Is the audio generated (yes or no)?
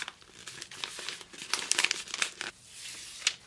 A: no